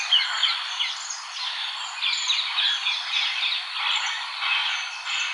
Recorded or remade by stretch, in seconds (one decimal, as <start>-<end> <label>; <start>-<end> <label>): 0.0-5.3 recorded